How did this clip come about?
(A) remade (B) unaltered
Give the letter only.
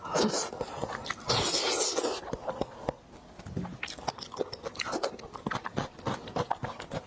B